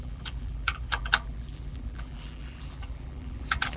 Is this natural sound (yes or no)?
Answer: no